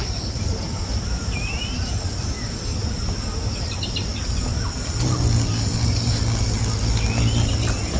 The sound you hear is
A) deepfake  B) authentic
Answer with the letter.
B